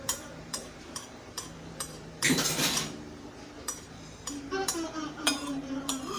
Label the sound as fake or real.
fake